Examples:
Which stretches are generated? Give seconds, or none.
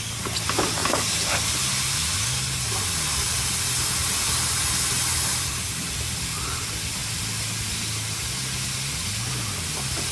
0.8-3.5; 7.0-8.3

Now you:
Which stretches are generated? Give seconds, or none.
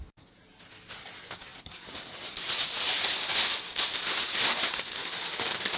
none